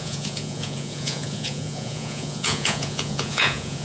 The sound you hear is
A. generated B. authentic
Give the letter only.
A